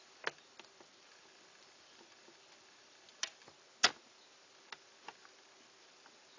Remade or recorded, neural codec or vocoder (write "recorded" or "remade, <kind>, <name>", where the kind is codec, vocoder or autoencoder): recorded